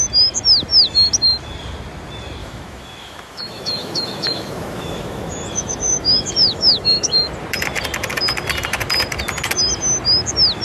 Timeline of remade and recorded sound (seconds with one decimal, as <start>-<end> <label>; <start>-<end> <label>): 0.0-2.4 recorded; 2.4-7.3 remade; 7.3-10.6 recorded